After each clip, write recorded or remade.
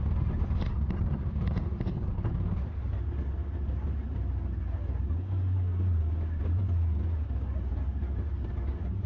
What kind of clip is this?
recorded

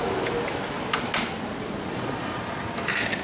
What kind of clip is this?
recorded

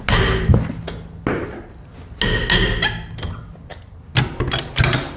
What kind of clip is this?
recorded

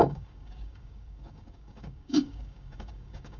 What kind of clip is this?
remade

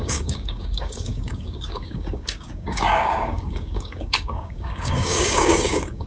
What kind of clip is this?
remade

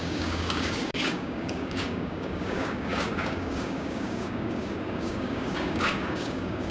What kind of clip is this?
remade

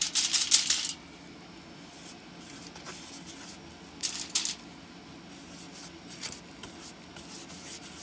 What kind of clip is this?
recorded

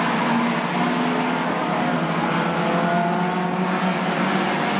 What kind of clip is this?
recorded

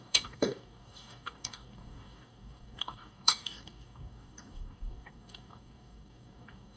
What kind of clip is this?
remade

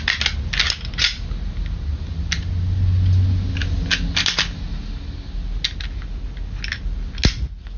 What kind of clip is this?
recorded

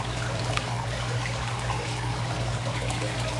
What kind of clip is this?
remade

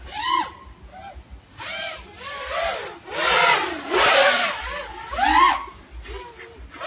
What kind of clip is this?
recorded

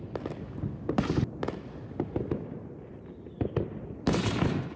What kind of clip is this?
recorded